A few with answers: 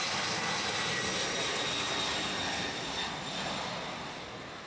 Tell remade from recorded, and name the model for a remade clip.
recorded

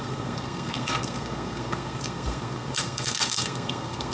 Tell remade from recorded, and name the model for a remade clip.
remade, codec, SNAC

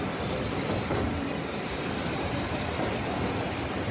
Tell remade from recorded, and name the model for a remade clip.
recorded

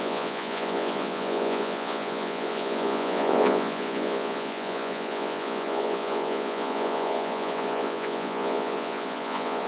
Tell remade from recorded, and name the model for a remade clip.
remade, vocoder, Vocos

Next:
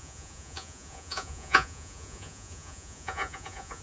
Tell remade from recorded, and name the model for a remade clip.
remade, vocoder, Vocos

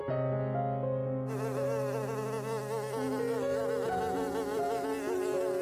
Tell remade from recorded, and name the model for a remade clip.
recorded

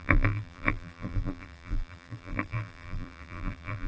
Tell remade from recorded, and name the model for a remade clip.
remade, vocoder, BigVGAN v2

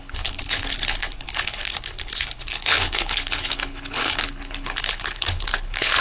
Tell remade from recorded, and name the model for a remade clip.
remade, codec, HILCodec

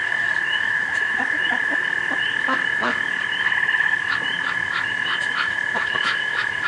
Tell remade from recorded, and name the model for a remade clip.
remade, autoencoder, DAC-VAE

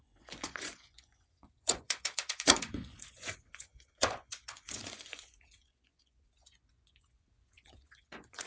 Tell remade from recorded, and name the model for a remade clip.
remade, vocoder, Vocos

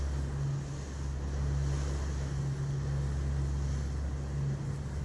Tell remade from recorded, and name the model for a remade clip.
recorded